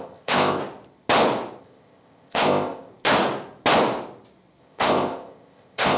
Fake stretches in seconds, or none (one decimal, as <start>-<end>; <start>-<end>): 0.0-0.6; 1.6-2.9; 4.6-6.0